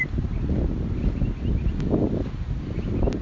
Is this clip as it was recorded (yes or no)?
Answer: yes